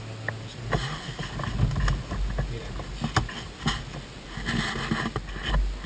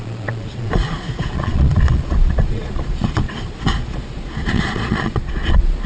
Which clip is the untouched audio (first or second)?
first